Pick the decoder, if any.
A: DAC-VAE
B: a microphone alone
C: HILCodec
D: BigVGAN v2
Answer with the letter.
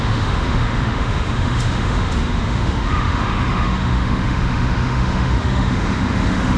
A